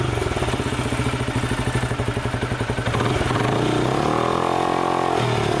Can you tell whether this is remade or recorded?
recorded